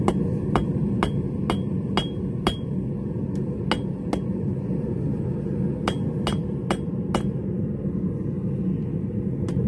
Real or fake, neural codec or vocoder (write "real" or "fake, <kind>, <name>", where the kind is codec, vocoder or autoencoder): real